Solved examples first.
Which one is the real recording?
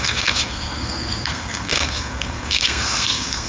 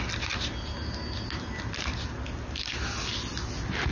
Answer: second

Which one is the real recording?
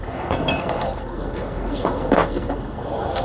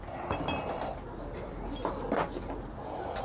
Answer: second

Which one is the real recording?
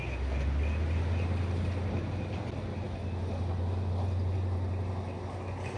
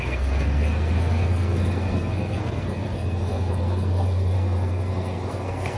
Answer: first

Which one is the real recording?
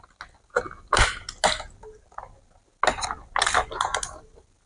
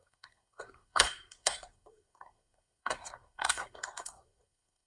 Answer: first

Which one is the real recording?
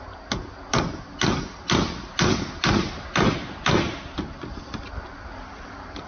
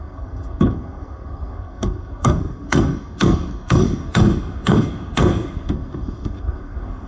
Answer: first